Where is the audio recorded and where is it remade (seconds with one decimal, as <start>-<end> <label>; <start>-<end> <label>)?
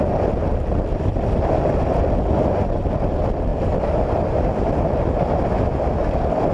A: 0.0-6.5 recorded